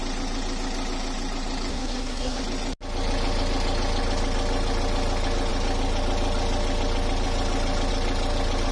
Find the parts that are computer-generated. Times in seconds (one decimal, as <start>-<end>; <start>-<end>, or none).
1.7-2.4